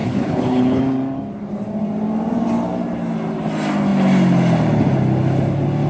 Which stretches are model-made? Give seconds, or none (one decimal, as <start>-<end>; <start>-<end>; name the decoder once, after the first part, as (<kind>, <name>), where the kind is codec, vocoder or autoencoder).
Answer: 0.0-0.8 (codec, HILCodec)